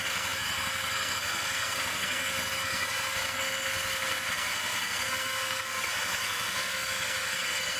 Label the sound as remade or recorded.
remade